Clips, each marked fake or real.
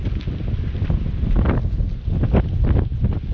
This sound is real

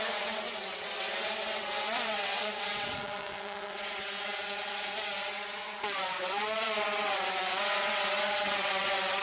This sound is fake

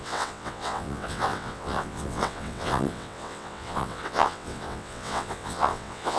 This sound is fake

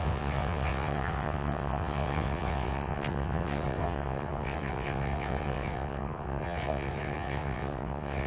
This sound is fake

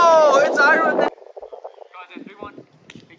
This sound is real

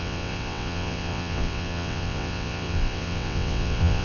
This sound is fake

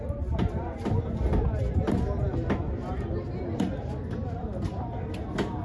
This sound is real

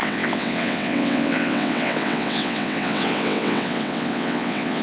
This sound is fake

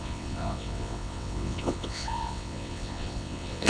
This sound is fake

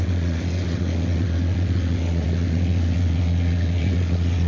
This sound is fake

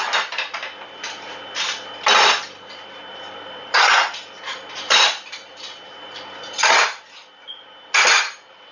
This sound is real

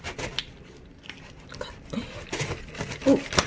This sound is real